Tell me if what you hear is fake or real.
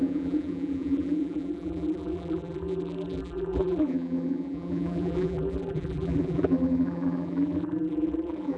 fake